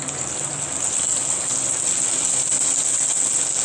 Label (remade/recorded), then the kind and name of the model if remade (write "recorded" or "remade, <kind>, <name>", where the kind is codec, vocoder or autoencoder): recorded